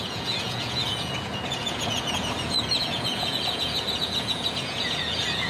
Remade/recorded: remade